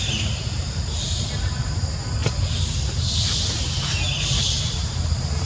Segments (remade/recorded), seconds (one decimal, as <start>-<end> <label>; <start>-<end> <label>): 0.0-2.2 remade; 2.2-4.6 recorded; 4.6-5.5 remade